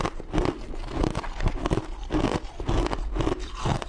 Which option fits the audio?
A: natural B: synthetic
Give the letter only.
A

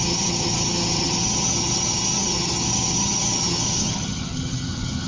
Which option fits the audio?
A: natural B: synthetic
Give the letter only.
B